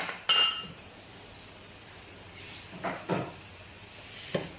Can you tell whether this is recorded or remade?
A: recorded